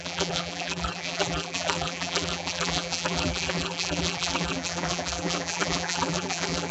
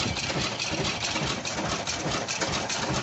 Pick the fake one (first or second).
first